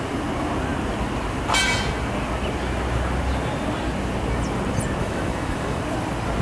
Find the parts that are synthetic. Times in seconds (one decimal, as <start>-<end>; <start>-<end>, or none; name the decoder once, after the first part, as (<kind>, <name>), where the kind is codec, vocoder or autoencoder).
5.0-5.8 (autoencoder, DAC-VAE)